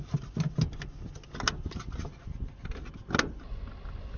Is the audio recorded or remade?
recorded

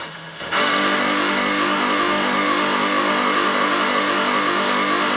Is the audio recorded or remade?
remade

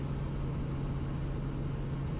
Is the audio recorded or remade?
recorded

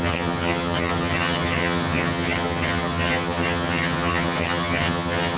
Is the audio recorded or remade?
remade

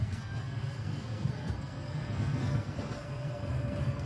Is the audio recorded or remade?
remade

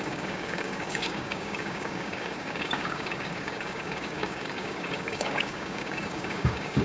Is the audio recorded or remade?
remade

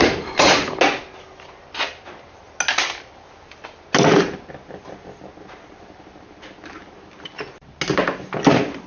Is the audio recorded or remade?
recorded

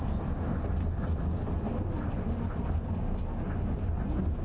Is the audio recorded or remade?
recorded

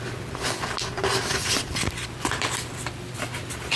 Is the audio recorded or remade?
remade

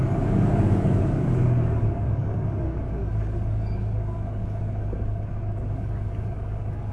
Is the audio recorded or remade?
remade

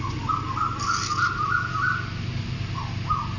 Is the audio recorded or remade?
recorded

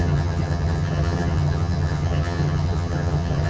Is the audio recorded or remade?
remade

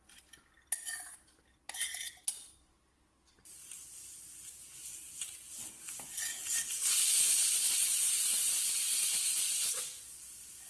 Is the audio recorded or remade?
recorded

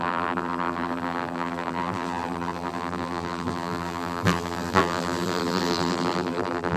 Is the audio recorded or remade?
remade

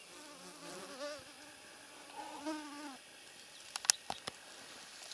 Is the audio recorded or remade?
recorded